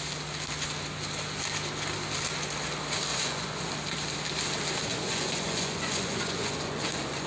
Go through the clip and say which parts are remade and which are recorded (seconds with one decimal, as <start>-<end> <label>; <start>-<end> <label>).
0.0-3.1 recorded; 3.1-3.7 remade; 3.7-4.9 recorded; 4.9-7.3 remade